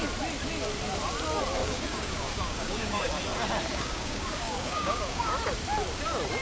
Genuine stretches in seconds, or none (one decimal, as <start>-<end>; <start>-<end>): 0.0-1.6; 3.1-3.7; 5.3-6.4